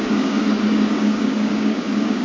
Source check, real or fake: fake